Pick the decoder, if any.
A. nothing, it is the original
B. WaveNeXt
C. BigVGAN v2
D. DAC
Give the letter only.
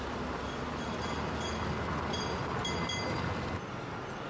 A